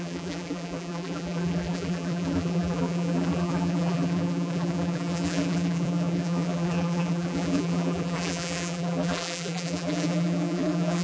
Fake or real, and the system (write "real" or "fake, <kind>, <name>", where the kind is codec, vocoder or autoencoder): fake, vocoder, BigVGAN v2